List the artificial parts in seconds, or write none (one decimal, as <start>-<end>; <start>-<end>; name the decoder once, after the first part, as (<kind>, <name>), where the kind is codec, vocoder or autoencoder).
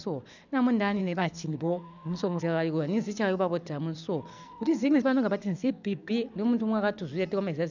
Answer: 1.0-2.4 (codec, SNAC); 4.3-5.0; 5.4-6.1